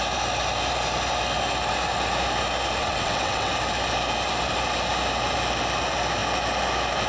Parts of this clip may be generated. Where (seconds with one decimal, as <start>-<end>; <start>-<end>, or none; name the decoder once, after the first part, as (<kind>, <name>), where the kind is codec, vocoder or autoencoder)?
2.8-3.5 (vocoder, WaveNeXt)